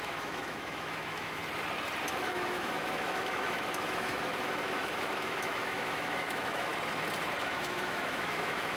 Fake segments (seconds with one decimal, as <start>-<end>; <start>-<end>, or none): 0.0-1.4; 2.1-6.7; 7.4-8.8